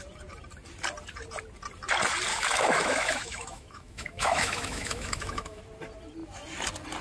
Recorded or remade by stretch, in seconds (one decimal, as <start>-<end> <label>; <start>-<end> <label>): 0.0-2.3 recorded; 2.3-5.6 remade; 5.6-7.0 recorded